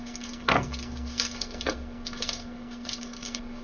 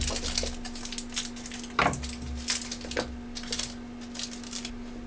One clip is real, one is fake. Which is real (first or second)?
second